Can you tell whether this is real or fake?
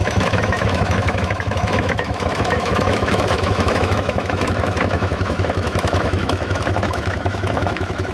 fake